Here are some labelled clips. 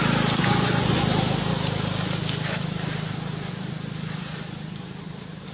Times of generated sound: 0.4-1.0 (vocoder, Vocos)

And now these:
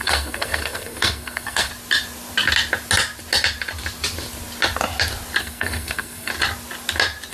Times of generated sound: 0.0-1.7 (codec, SNAC); 5.4-6.3

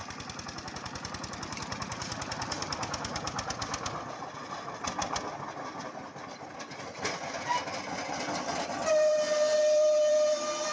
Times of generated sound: 0.0-4.4 (vocoder, BigVGAN v2); 8.1-10.7

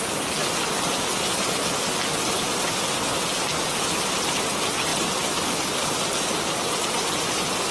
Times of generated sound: none

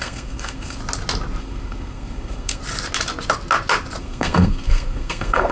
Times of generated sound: 0.0-0.8 (codec, SNAC); 1.4-2.6; 4.0-5.5

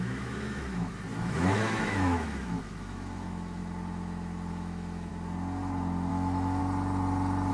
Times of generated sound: 0.0-3.6 (autoencoder, DAC-VAE); 4.5-5.1; 6.1-6.6